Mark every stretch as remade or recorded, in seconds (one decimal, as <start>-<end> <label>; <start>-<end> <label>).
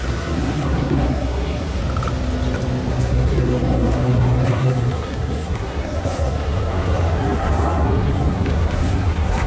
0.0-1.8 remade; 1.8-2.9 recorded; 2.9-9.5 remade